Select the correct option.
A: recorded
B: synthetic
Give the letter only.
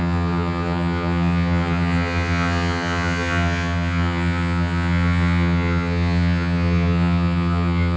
B